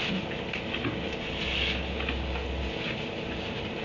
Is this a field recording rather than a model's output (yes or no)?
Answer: yes